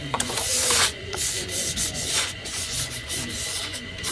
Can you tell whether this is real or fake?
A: fake